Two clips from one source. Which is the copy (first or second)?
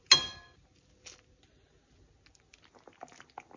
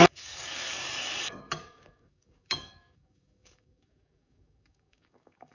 second